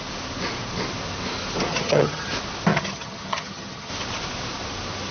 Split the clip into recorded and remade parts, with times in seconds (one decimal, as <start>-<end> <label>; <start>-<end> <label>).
0.0-1.7 recorded; 1.7-2.3 remade; 2.3-2.7 recorded; 2.7-3.9 remade; 3.9-5.1 recorded